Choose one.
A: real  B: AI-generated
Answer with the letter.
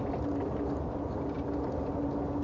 A